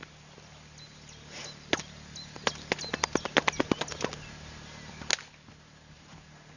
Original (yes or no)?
yes